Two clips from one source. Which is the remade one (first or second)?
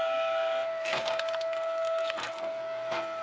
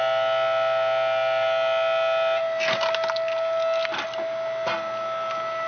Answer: first